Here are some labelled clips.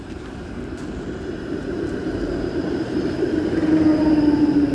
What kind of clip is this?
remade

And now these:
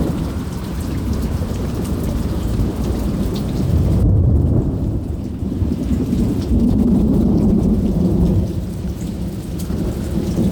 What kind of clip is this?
remade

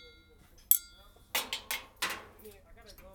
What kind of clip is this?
recorded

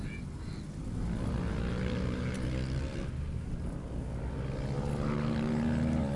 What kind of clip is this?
recorded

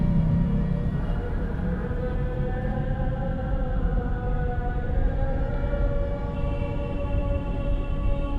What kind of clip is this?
remade